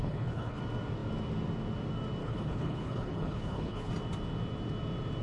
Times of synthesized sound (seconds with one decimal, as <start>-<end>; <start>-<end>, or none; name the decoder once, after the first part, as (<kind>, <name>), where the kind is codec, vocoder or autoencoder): 0.0-0.6 (codec, HILCodec); 2.2-3.9